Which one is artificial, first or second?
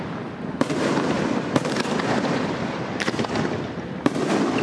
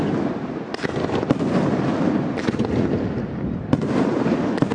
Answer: first